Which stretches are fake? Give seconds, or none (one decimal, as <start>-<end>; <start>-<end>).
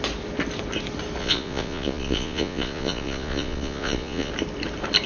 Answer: 1.2-4.3